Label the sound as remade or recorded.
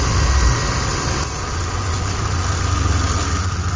recorded